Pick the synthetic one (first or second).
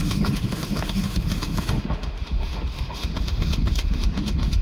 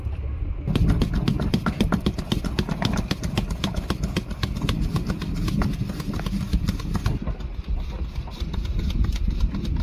first